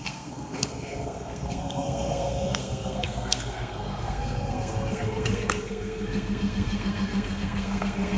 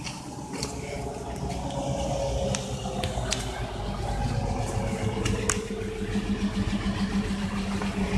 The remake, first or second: first